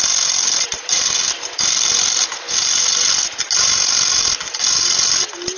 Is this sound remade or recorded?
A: recorded